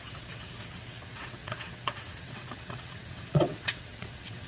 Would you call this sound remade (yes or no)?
yes